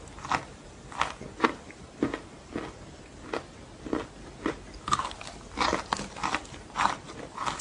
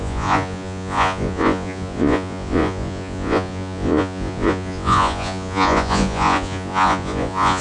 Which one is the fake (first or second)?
second